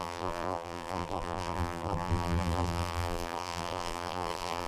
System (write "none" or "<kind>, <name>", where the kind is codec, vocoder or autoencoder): vocoder, BigVGAN v2